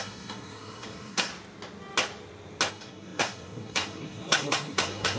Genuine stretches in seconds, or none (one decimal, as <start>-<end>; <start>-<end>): 1.3-2.7